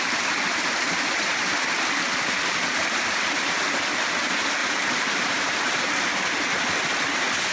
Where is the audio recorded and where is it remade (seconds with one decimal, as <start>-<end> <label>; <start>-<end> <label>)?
0.0-4.6 recorded; 4.6-5.6 remade; 5.6-7.5 recorded